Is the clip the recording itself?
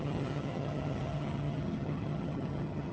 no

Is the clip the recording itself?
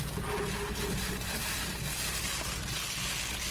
yes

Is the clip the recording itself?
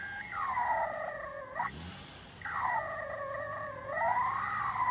yes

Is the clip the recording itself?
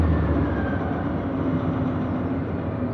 yes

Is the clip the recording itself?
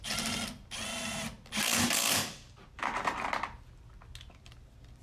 yes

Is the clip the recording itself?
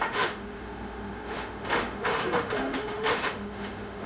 no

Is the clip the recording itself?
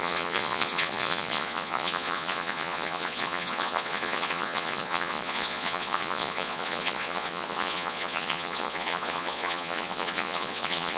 no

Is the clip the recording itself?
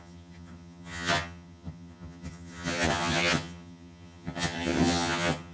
no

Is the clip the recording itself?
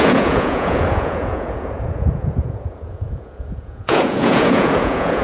no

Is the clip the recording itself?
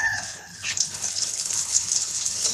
no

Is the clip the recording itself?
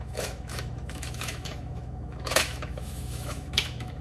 no